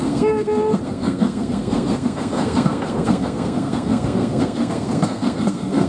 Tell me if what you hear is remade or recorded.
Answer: remade